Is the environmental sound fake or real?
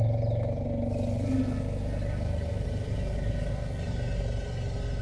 real